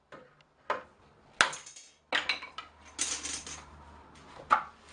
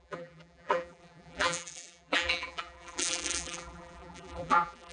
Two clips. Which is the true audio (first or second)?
first